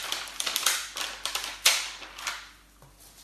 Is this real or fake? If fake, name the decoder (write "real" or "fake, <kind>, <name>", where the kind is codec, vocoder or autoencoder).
real